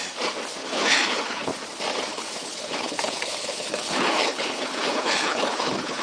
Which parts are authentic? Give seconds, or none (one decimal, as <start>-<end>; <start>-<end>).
0.0-0.6; 1.5-2.1